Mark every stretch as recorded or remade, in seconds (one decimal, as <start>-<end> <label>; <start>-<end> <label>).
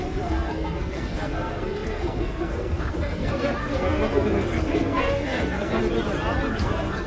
0.0-5.8 remade; 5.8-6.5 recorded; 6.5-7.1 remade